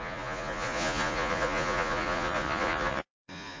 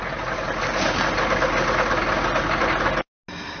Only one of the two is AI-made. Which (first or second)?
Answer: first